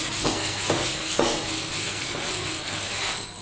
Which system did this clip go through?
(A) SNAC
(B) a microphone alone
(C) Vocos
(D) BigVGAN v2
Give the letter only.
A